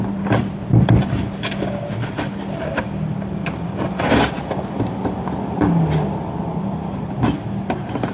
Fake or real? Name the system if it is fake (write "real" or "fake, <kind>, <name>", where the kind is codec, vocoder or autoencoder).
fake, vocoder, BigVGAN v2